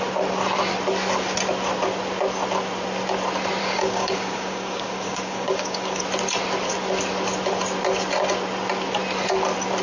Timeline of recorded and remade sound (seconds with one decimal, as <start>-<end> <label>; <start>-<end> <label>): 0.0-3.6 recorded; 3.6-6.0 remade; 6.0-9.8 recorded